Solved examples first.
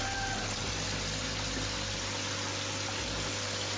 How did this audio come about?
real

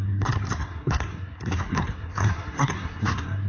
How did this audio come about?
fake